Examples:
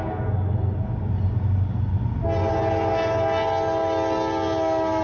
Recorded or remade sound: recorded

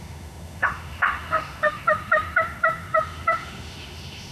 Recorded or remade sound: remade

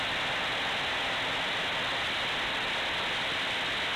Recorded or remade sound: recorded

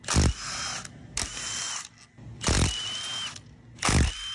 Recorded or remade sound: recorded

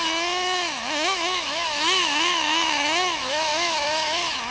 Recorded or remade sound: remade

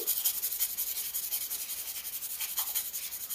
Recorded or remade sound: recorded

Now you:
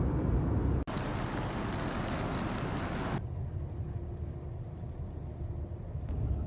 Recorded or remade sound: recorded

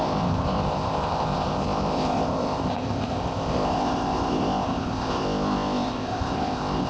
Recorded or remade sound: remade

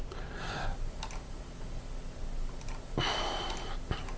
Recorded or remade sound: recorded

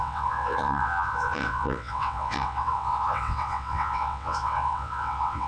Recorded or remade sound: remade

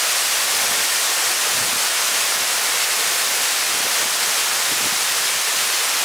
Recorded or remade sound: recorded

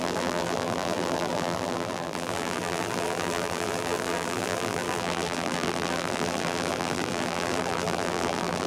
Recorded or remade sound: remade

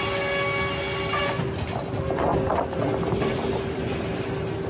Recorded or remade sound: recorded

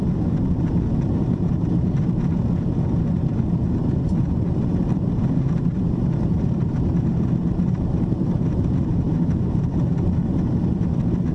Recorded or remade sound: remade